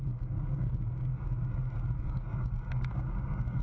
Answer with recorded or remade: remade